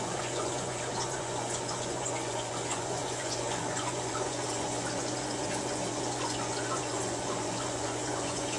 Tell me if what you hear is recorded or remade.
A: remade